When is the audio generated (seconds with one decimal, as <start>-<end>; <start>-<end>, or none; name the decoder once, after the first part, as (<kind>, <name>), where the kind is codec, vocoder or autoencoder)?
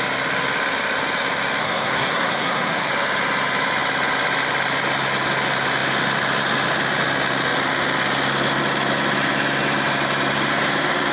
1.6-2.9 (codec, SNAC)